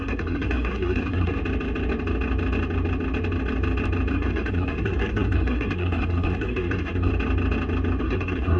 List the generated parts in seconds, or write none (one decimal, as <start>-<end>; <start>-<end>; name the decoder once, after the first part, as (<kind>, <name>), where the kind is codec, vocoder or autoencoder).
0.0-1.4 (codec, SNAC); 4.1-7.1; 8.0-8.6